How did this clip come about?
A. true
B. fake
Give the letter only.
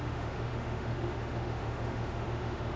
B